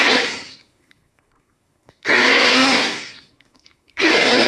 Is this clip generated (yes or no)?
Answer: yes